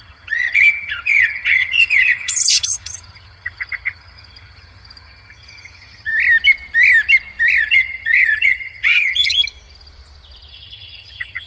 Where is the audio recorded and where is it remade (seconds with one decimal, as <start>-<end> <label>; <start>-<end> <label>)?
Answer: 0.0-6.1 remade; 6.1-7.6 recorded; 7.6-9.4 remade; 9.4-10.5 recorded; 10.5-11.5 remade